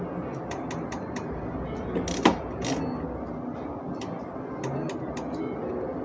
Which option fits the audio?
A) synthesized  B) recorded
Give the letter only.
B